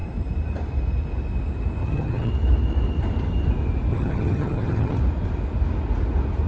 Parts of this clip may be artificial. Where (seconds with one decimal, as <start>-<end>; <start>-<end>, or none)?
1.8-2.3; 3.9-5.0